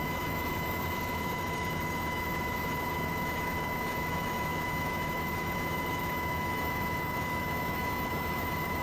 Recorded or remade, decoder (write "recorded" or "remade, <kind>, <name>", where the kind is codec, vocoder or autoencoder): remade, autoencoder, DAC-VAE